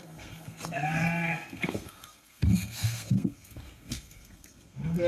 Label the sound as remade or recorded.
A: remade